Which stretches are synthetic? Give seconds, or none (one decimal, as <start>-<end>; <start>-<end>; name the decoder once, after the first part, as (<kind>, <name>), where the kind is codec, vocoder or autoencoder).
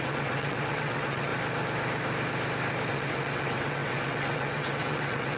0.0-1.3 (vocoder, WaveNeXt); 2.9-5.4